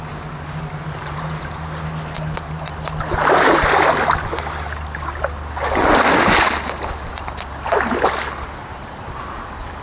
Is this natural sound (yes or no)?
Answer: yes